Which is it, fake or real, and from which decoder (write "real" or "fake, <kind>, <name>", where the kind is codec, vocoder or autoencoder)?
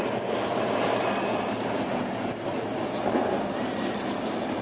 real